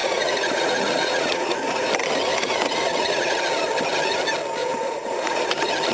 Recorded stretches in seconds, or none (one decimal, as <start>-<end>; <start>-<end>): 1.9-2.3; 3.4-4.6; 5.4-5.9

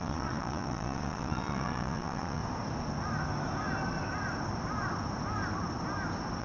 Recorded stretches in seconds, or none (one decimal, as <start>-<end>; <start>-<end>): 2.4-6.4

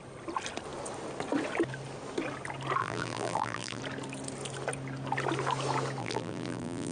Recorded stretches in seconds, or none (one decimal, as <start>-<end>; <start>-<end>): 0.0-2.8; 3.8-6.0

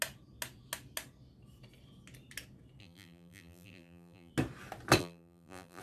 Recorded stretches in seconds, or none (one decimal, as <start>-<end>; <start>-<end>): 0.0-2.8; 4.3-5.0

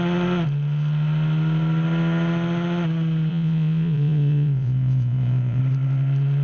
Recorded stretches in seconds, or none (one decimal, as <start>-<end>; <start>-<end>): 0.0-3.3; 5.6-6.4